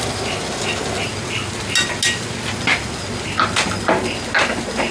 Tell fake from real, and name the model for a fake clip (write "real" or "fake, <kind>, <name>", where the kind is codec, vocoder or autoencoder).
real